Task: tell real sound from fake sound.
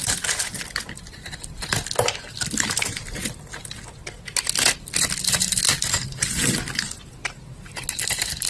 real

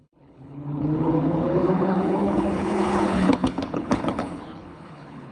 fake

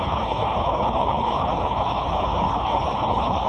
fake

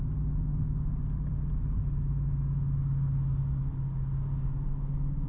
real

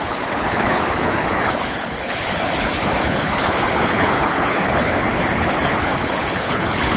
fake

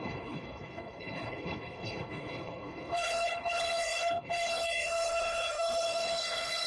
fake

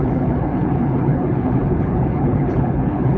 fake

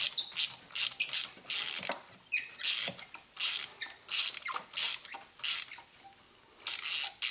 real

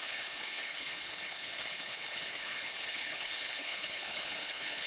fake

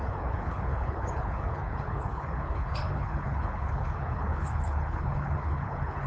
fake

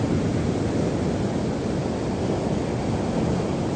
real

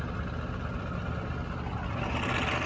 real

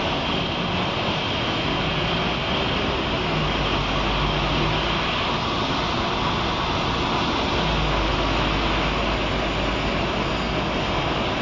real